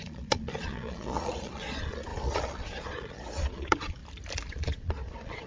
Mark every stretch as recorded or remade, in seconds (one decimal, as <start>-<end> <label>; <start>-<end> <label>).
0.0-4.0 remade; 4.0-4.5 recorded; 4.5-5.5 remade